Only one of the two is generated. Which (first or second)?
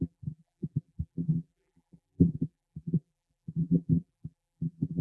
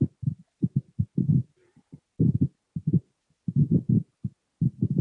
first